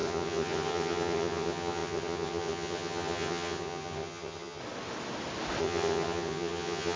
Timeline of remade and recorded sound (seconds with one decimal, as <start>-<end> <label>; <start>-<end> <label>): 0.0-4.6 remade; 4.6-5.6 recorded; 5.6-7.0 remade